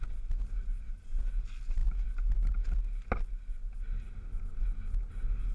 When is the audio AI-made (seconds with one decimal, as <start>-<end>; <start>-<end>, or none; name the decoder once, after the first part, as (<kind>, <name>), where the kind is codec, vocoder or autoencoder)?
none